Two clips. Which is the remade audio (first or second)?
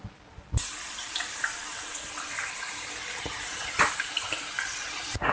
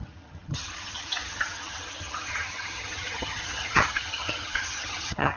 second